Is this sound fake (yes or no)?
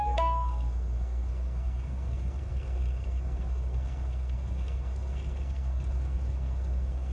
yes